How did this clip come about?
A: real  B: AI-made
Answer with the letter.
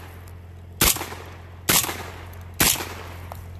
A